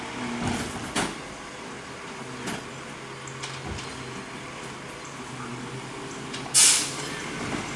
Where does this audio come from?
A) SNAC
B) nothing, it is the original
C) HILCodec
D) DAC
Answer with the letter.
B